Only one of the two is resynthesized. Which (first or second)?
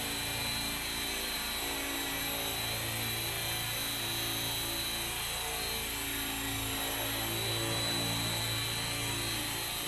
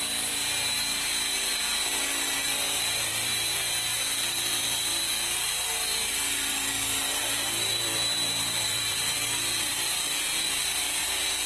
second